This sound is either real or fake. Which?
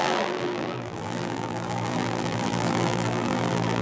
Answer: fake